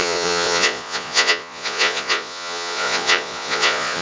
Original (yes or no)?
no